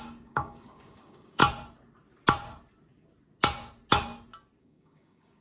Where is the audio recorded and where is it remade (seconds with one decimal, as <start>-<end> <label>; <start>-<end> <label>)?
0.0-1.4 remade; 1.4-4.6 recorded; 4.6-5.4 remade